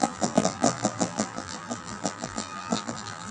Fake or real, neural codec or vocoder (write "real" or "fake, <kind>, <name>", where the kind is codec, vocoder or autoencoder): fake, vocoder, BigVGAN v2